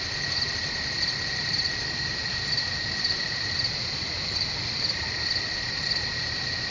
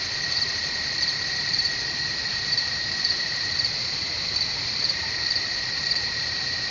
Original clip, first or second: first